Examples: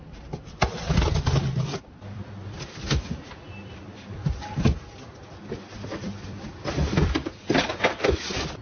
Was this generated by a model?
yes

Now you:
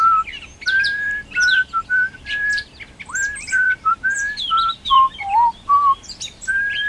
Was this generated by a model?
yes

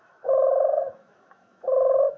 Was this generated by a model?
yes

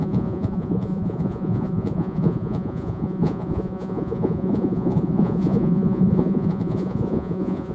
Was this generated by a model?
yes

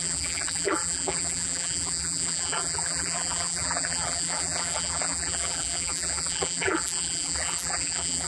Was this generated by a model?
yes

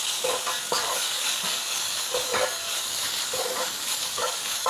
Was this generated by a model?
yes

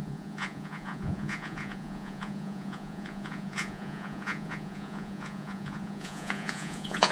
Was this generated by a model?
yes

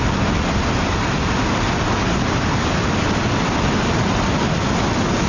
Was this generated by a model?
no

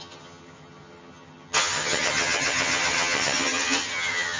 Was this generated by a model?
yes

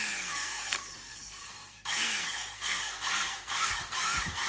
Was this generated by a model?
yes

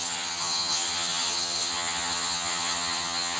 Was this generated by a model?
yes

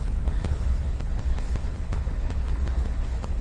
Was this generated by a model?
yes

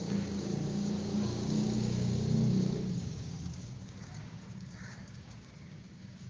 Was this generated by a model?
yes